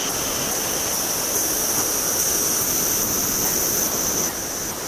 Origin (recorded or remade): recorded